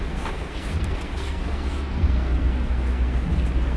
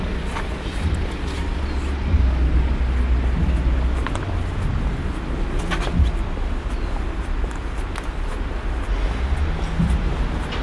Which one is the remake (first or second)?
first